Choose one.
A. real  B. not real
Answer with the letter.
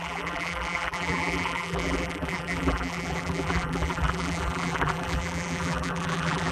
B